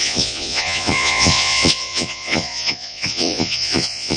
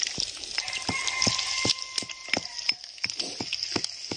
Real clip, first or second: second